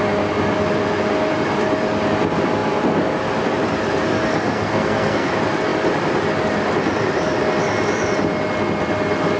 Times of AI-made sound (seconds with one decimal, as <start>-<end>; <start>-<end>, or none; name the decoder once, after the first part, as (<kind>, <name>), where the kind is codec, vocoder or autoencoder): 4.3-5.3 (codec, SNAC)

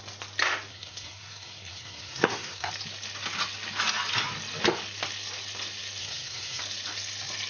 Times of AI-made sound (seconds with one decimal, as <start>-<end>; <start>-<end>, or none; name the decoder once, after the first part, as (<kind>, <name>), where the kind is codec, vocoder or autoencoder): 0.7-2.7 (codec, SNAC); 6.0-6.6

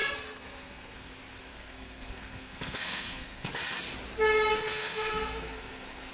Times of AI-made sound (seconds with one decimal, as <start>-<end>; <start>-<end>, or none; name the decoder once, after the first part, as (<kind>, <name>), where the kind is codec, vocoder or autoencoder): 0.0-1.1 (codec, SNAC); 1.5-3.5; 4.5-6.1

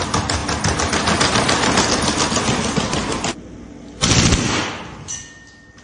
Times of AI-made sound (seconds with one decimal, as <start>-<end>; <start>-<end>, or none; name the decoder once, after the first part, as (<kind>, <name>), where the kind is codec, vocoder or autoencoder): none

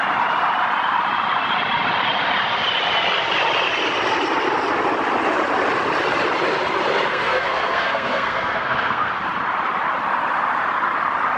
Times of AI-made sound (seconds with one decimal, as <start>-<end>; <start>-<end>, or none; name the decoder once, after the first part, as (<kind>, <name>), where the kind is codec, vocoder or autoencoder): 7.1-9.1 (codec, SNAC)